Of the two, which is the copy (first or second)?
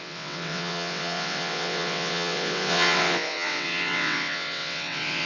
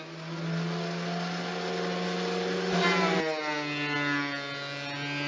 first